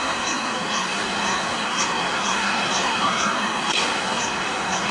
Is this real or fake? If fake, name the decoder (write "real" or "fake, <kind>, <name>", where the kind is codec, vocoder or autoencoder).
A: fake, codec, SNAC